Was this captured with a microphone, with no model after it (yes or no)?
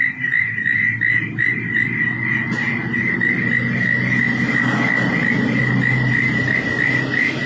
yes